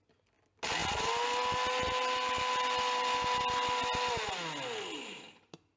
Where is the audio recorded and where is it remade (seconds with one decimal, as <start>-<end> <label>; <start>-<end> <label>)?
0.0-5.8 recorded